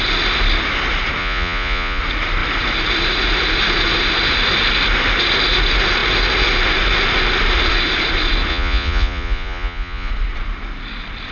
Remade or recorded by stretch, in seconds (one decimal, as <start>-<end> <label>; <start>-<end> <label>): 0.0-1.2 recorded; 1.2-2.0 remade; 2.0-8.5 recorded; 8.5-10.1 remade; 10.1-11.3 recorded